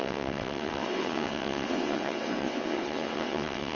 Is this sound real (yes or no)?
no